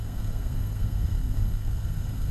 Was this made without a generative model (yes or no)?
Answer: no